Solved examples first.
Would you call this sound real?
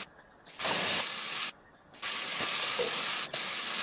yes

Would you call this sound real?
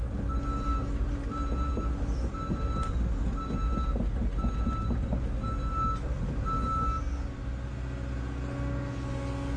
yes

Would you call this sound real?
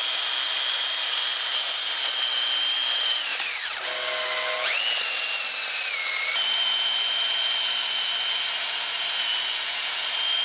yes